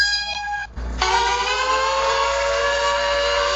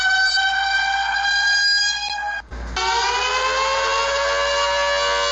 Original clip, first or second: second